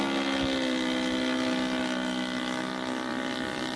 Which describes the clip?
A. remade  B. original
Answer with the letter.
B